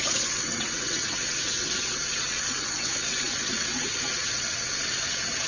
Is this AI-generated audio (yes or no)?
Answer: yes